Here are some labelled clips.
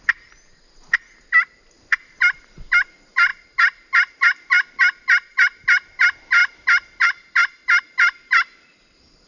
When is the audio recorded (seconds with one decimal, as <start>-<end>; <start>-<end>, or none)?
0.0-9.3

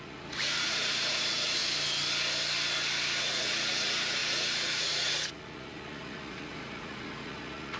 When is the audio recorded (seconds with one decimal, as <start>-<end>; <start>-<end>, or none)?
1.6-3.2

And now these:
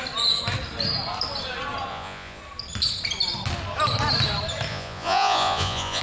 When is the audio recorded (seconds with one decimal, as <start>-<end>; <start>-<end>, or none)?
0.0-1.9; 2.4-4.7

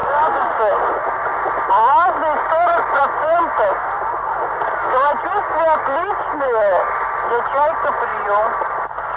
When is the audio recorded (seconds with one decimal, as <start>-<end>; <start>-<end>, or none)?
0.0-9.2